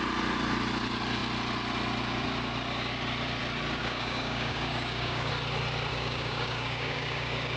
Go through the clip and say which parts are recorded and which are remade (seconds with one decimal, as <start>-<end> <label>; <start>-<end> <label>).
0.0-3.8 recorded; 3.8-5.3 remade; 5.3-5.9 recorded; 5.9-7.6 remade